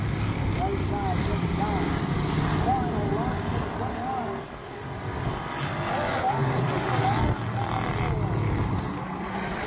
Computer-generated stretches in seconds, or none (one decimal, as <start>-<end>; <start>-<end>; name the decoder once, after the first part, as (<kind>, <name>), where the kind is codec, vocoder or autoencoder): none